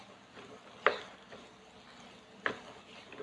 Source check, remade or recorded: recorded